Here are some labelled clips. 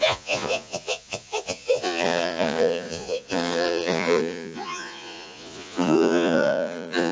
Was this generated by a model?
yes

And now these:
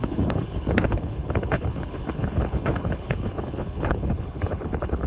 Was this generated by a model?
yes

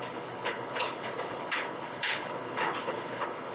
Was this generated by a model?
yes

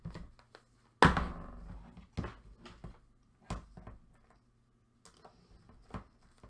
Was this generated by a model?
no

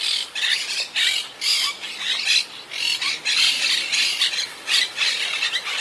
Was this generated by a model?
no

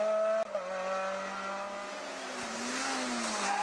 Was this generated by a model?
no